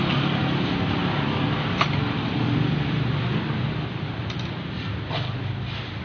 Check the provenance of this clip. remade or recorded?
recorded